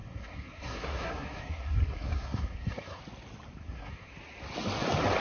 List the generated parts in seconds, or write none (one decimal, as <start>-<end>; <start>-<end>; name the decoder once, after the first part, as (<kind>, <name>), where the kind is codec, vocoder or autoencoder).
0.0-3.0 (codec, SNAC); 3.6-4.1